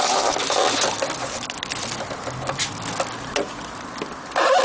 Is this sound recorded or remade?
recorded